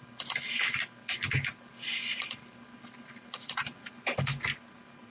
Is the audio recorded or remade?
recorded